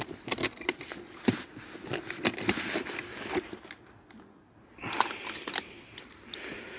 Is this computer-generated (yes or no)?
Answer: yes